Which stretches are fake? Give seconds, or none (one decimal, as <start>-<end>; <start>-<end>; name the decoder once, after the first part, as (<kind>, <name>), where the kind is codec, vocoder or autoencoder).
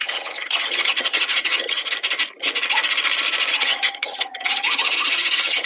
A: 0.0-1.8 (vocoder, HiFi-GAN); 3.5-5.7